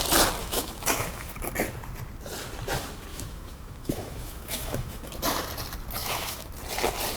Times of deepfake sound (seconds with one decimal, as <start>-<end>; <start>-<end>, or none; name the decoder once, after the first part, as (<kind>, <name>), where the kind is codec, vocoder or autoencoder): 0.4-1.3 (autoencoder, DAC-VAE); 3.1-5.1; 6.0-6.5